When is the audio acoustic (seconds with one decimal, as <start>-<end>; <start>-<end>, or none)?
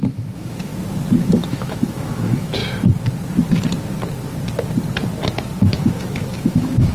0.7-1.3; 2.6-5.7